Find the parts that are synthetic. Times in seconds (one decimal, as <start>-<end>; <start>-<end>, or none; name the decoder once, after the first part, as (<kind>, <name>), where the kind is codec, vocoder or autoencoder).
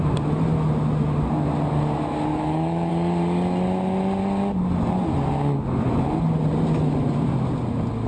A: 2.3-2.9 (autoencoder, DAC-VAE)